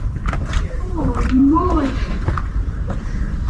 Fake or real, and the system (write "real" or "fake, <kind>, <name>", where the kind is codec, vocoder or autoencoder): fake, vocoder, BigVGAN v2